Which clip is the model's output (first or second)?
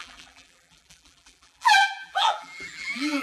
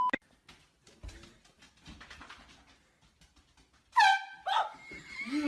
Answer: first